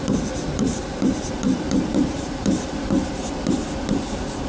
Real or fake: fake